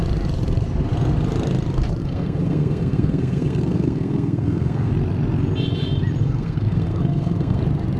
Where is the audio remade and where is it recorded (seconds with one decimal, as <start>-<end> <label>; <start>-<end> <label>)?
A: 0.0-2.0 recorded; 2.0-4.9 remade; 4.9-6.2 recorded; 6.2-7.6 remade; 7.6-8.0 recorded